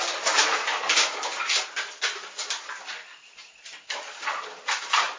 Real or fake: real